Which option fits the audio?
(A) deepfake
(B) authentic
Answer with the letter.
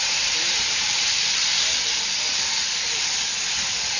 A